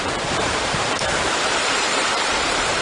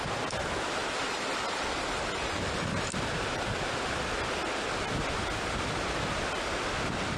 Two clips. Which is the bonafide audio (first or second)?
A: second